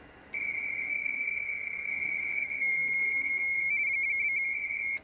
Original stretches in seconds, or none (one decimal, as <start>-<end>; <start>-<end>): 0.0-0.9; 1.9-2.3; 3.7-5.0